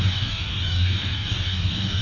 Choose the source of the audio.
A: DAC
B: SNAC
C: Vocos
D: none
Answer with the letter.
A